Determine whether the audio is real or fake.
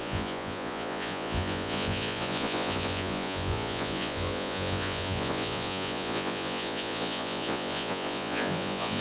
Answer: fake